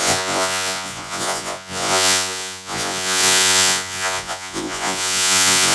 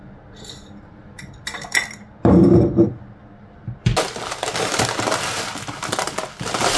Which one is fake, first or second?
first